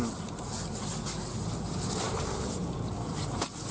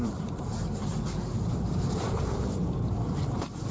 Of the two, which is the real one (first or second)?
first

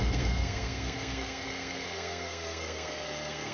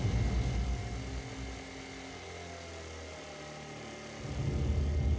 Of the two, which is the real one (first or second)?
second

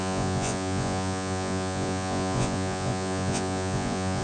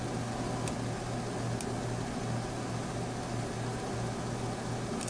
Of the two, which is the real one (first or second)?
second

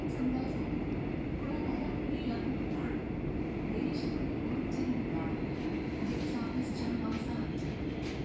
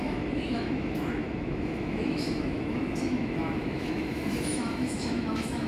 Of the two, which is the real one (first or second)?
first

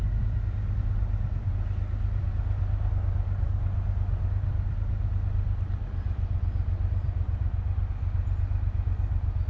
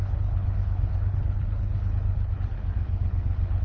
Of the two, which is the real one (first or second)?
first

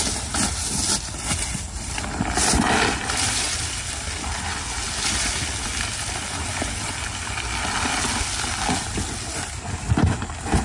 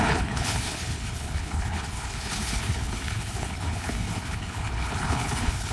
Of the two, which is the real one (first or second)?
first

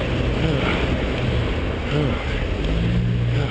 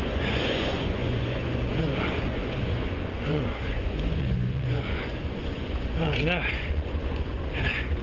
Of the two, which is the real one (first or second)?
first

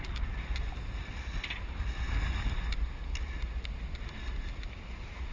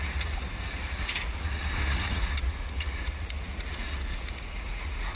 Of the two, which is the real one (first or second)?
first